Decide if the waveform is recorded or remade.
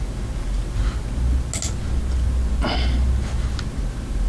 recorded